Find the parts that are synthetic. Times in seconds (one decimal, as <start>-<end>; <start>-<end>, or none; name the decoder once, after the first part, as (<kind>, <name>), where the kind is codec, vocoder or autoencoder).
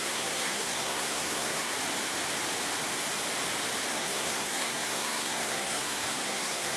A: 0.0-1.7 (codec, SNAC); 3.9-6.8